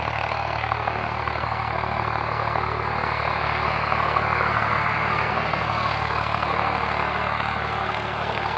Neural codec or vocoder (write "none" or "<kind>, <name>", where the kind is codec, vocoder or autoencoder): codec, SNAC